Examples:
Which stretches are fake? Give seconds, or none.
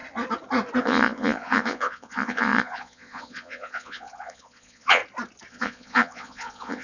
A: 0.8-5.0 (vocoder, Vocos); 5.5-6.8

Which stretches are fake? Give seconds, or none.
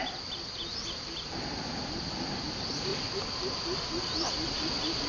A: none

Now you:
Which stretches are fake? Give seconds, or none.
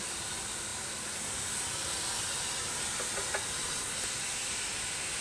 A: none